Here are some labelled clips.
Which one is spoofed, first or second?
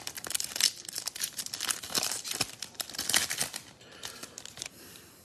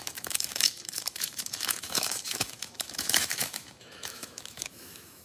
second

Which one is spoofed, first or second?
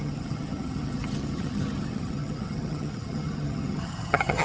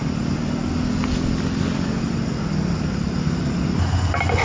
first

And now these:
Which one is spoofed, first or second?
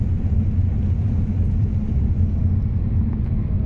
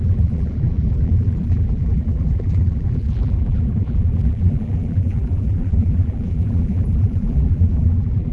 second